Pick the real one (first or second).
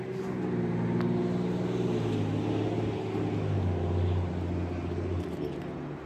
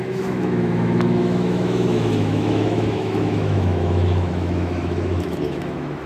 first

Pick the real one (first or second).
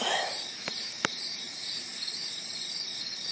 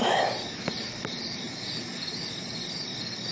second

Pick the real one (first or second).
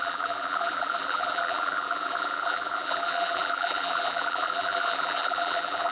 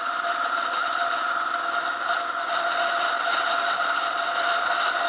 second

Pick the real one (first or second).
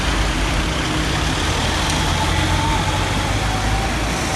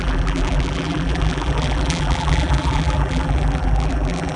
first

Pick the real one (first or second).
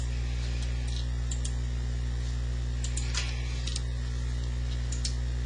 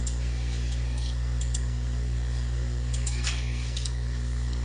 first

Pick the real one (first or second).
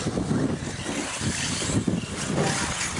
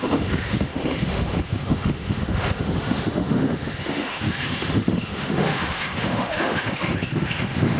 first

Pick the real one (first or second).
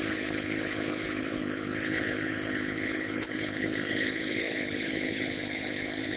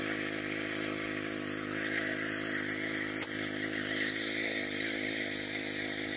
second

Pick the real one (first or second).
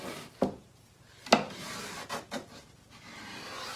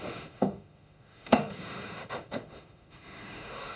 first